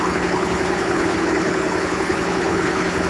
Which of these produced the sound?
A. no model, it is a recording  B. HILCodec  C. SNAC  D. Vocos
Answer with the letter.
B